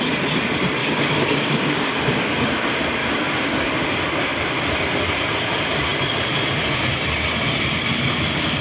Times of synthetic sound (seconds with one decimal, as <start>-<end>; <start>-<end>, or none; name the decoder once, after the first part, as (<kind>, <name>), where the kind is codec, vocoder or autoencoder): 0.8-2.5 (codec, DAC); 3.0-3.7